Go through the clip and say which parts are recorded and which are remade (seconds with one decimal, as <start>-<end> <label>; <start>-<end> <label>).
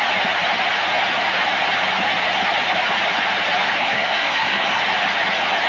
0.0-3.8 recorded; 3.8-4.8 remade; 4.8-5.7 recorded